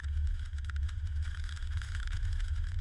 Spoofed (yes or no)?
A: yes